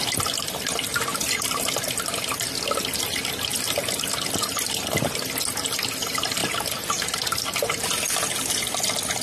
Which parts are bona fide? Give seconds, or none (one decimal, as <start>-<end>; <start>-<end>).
0.0-9.2